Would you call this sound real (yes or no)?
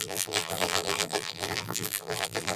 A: no